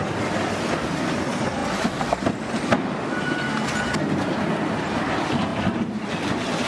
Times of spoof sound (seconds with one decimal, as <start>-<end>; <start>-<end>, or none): 5.5-6.1